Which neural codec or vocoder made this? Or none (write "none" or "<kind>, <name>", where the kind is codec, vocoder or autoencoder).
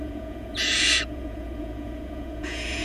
vocoder, Vocos